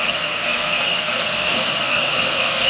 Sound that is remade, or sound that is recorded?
remade